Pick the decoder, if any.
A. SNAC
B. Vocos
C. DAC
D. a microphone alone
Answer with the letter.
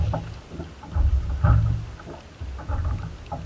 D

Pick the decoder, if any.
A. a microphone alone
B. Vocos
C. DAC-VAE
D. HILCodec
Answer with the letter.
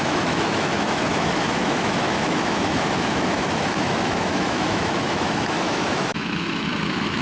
C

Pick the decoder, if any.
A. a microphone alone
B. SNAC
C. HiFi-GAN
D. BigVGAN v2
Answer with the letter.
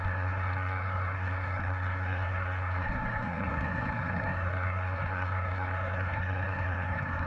B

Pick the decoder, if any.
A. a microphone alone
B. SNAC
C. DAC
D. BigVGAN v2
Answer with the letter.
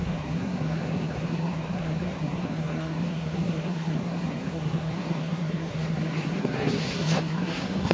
B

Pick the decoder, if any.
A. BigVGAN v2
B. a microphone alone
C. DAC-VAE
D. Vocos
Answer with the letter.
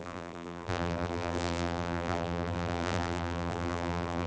A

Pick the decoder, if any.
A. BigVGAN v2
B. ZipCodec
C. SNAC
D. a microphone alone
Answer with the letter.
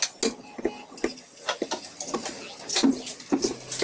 D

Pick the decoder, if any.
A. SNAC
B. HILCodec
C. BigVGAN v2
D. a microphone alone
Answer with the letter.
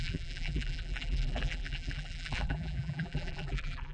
C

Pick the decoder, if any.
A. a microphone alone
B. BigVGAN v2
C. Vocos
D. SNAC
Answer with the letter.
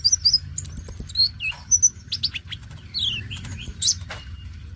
A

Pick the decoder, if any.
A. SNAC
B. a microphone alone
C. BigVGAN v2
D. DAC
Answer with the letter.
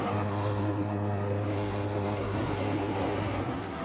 A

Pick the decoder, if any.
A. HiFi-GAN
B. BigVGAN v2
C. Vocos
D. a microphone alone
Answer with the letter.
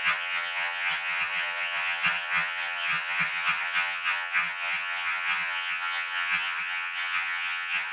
A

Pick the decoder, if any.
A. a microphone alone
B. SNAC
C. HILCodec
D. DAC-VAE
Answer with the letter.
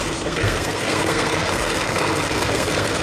B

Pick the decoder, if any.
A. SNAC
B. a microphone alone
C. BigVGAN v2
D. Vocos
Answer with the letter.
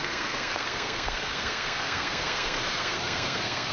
A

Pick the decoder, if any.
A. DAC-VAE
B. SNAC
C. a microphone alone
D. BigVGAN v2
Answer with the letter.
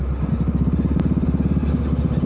C